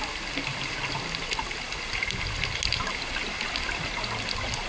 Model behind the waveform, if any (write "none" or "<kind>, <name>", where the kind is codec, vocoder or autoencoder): none